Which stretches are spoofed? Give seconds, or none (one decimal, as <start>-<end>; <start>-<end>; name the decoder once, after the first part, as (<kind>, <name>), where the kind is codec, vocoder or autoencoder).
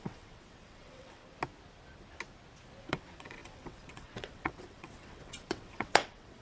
0.0-1.2 (vocoder, WaveNeXt); 2.9-6.4